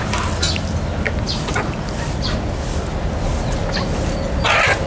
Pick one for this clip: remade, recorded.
recorded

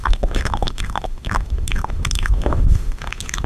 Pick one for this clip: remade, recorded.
remade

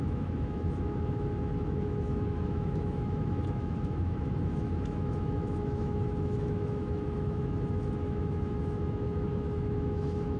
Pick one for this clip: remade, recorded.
remade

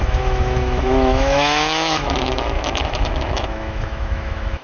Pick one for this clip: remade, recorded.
remade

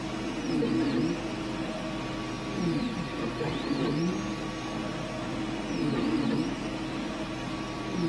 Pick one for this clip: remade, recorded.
recorded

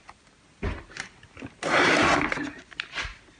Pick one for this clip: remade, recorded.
recorded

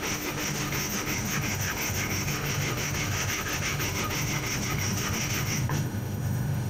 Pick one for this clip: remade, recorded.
remade